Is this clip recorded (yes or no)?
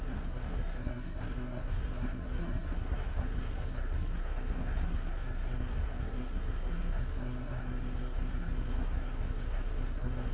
no